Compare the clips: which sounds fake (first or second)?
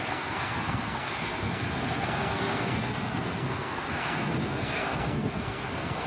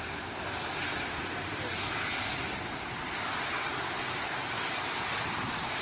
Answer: first